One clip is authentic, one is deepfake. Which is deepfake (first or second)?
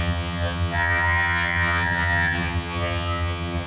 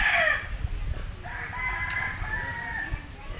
first